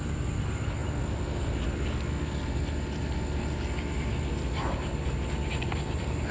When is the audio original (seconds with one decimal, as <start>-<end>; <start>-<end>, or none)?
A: 0.0-6.3